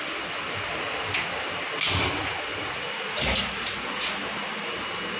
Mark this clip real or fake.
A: real